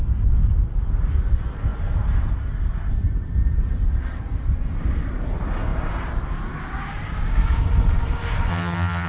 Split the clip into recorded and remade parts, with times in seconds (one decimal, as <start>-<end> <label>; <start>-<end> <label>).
0.0-8.5 recorded; 8.5-9.1 remade